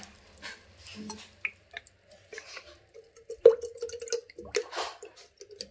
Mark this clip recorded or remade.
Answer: recorded